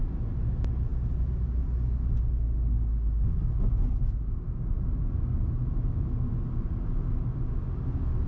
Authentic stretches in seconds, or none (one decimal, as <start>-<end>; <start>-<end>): 0.0-8.3